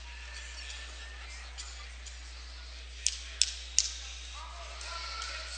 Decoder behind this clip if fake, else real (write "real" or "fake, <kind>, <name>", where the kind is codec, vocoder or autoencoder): real